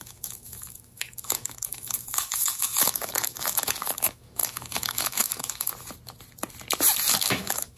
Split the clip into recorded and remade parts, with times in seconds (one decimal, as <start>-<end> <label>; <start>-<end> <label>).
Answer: 0.0-5.7 remade; 5.7-7.2 recorded; 7.2-7.8 remade